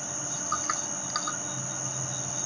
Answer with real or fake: real